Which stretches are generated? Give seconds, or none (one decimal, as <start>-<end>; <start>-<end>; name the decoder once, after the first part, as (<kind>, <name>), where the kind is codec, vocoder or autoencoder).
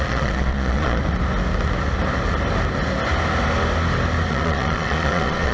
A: 0.0-1.0 (vocoder, Vocos); 4.3-5.5